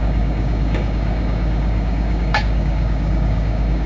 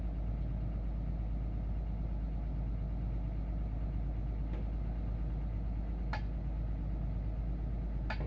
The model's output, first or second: first